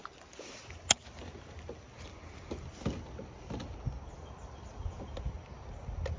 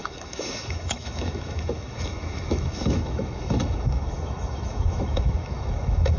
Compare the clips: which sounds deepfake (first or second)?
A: second